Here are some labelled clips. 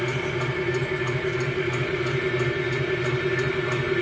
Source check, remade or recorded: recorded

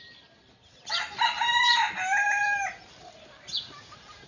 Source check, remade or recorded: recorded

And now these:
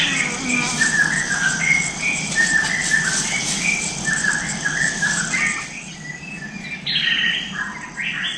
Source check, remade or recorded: recorded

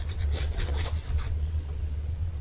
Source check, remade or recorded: remade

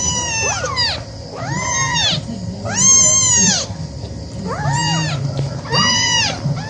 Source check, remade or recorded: recorded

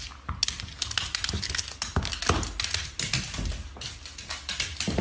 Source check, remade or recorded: recorded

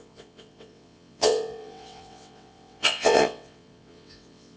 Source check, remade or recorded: remade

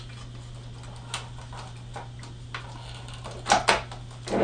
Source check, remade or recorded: recorded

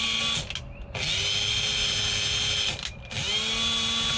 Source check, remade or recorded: recorded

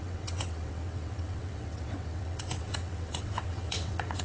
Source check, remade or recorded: remade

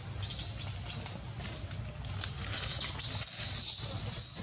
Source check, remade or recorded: recorded